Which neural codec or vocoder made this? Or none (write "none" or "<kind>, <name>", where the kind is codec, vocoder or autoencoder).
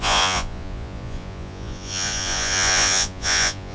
vocoder, Vocos